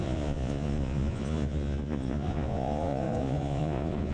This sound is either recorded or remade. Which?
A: remade